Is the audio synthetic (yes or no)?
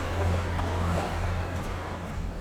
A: yes